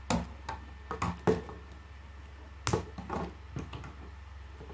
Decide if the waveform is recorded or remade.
recorded